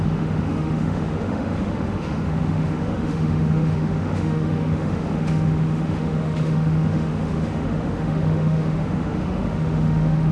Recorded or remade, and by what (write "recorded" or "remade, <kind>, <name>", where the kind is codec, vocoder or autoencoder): remade, autoencoder, DAC-VAE